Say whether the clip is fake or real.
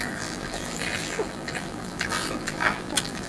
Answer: fake